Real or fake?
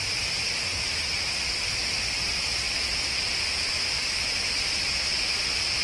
fake